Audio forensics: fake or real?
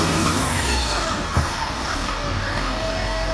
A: fake